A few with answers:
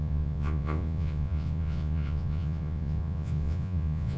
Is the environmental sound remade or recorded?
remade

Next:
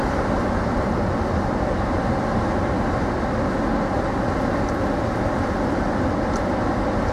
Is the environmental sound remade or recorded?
recorded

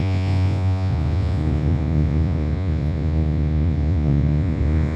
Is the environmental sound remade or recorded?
remade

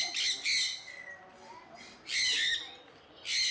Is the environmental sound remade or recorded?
recorded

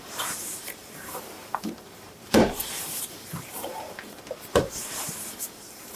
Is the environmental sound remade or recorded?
remade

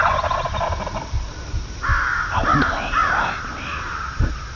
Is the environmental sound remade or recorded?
recorded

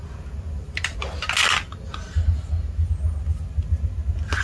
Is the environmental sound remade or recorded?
recorded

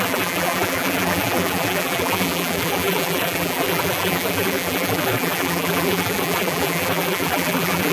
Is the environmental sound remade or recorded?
remade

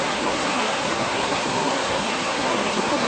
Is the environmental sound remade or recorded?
remade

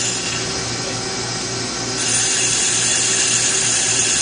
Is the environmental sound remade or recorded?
recorded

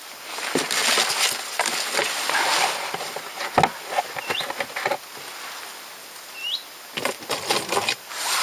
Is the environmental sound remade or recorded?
recorded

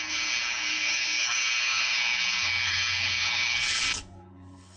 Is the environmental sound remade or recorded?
remade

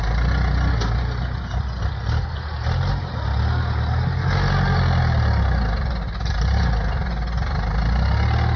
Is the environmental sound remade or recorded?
recorded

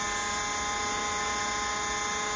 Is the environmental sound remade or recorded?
recorded